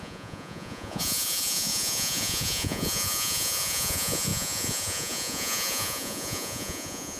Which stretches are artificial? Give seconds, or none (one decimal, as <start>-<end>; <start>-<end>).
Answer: 0.0-7.2